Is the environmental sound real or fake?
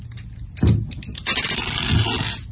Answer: real